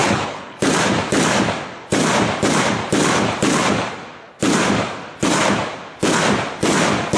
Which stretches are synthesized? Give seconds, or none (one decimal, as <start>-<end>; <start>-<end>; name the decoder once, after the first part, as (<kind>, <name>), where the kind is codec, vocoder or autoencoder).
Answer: 0.0-0.6 (codec, HILCodec)